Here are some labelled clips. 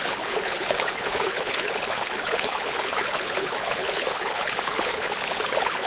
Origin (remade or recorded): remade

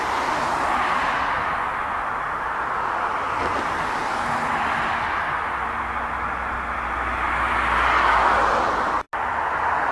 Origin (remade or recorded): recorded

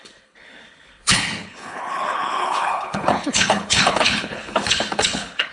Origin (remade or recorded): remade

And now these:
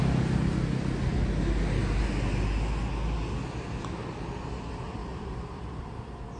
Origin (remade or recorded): recorded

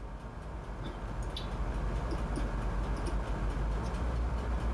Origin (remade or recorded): recorded